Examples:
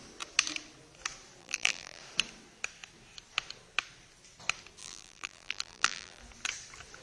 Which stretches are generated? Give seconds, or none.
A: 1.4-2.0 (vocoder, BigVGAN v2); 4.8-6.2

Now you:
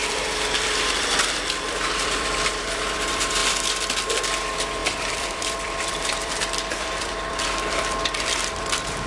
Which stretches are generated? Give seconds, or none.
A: 0.0-3.4 (vocoder, BigVGAN v2); 4.3-9.1